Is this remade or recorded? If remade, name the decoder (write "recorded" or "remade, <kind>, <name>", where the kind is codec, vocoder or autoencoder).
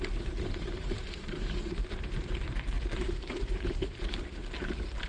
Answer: remade, vocoder, BigVGAN v2